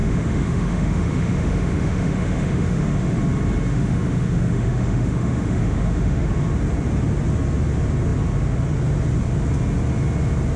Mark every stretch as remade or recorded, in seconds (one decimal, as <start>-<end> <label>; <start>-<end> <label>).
0.0-3.2 remade; 3.2-3.7 recorded; 3.7-6.3 remade; 6.3-10.6 recorded